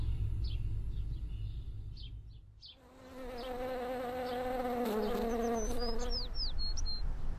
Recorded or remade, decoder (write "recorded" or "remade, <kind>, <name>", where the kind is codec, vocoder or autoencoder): recorded